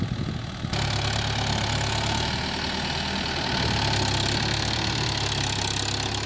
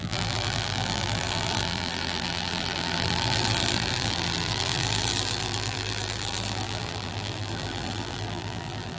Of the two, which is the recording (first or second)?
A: first